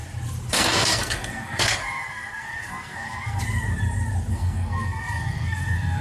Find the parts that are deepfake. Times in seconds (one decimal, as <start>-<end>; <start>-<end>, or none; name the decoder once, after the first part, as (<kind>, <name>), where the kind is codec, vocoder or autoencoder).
0.5-3.4 (codec, SNAC); 4.3-6.0